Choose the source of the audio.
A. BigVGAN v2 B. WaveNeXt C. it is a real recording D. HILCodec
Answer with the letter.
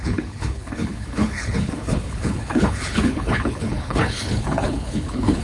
D